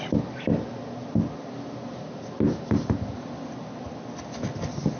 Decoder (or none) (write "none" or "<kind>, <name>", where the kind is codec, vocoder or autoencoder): none